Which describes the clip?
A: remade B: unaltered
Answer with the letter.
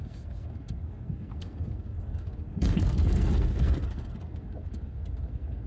A